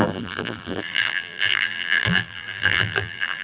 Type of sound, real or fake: fake